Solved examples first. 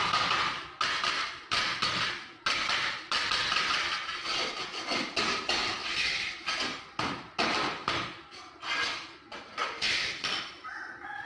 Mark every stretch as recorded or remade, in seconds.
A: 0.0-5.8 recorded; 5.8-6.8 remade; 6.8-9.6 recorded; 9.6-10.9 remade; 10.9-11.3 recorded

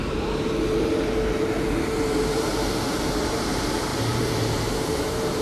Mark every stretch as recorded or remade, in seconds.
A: 0.0-5.4 remade

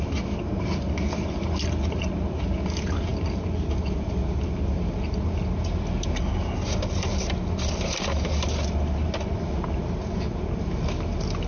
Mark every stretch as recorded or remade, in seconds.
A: 0.0-11.5 recorded

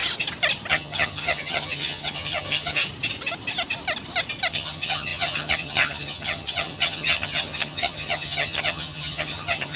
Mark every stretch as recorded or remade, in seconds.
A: 0.0-0.7 recorded; 0.7-2.8 remade; 2.8-4.5 recorded; 4.5-9.8 remade

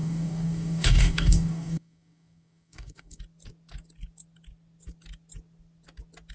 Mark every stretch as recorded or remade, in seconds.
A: 0.0-3.2 remade; 3.2-6.3 recorded